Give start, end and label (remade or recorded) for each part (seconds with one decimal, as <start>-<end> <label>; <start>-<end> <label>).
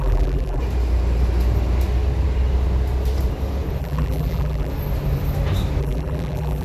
0.0-0.6 remade; 0.6-3.8 recorded; 3.8-4.7 remade; 4.7-5.8 recorded; 5.8-6.6 remade